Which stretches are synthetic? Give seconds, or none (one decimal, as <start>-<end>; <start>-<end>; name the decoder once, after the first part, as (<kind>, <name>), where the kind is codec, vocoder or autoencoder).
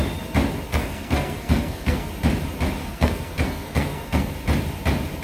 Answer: 0.7-2.1 (codec, SNAC); 2.8-4.3